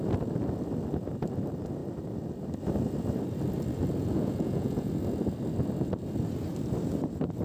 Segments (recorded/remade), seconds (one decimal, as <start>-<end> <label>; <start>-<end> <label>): 0.0-4.0 recorded; 4.0-4.9 remade; 4.9-7.4 recorded